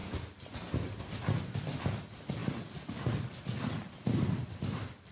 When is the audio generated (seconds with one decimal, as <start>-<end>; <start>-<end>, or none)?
none